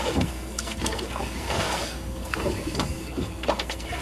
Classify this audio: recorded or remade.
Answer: remade